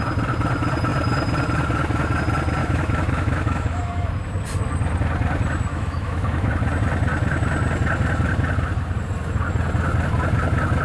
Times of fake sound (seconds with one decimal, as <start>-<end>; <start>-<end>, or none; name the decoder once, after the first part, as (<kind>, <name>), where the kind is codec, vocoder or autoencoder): 2.6-4.1 (autoencoder, DAC-VAE); 5.7-6.5